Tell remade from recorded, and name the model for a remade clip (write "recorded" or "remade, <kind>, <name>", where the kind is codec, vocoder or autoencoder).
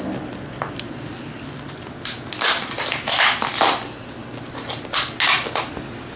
recorded